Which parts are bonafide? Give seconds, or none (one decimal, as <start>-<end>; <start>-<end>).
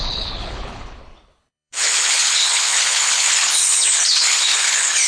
none